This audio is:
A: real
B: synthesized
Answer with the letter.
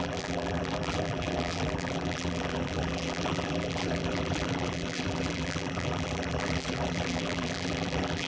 B